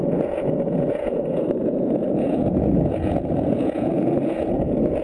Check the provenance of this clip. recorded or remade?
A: remade